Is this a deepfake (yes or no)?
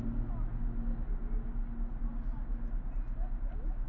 no